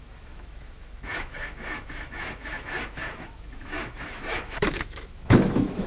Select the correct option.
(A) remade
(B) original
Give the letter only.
A